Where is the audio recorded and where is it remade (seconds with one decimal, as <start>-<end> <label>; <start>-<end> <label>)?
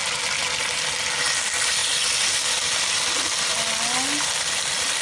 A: 0.0-5.0 recorded